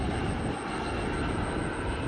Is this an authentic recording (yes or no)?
yes